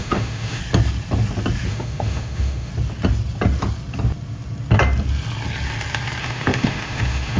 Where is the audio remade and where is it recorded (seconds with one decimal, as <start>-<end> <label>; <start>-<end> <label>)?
0.0-0.6 remade; 0.6-1.7 recorded; 1.7-2.7 remade; 2.7-6.2 recorded; 6.2-7.4 remade